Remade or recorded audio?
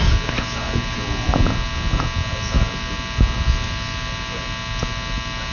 recorded